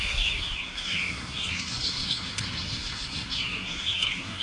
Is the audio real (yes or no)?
no